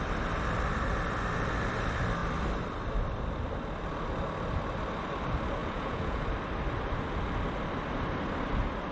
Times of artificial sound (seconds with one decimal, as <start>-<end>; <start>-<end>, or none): 5.6-6.2